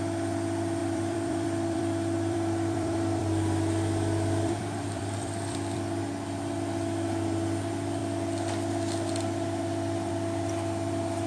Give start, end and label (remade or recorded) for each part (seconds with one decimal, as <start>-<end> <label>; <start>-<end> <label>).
0.0-0.8 recorded; 0.8-5.8 remade; 5.8-11.3 recorded